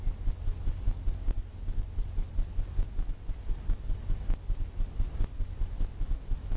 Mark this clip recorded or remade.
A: recorded